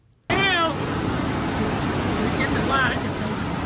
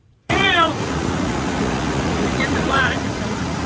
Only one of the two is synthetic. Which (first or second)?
second